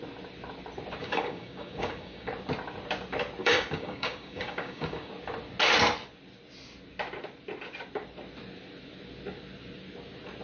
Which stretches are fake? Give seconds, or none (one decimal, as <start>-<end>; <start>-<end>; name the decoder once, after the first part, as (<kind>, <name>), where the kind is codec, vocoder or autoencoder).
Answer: 1.0-2.3 (codec, DAC); 3.4-5.1